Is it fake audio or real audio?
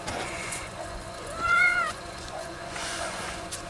fake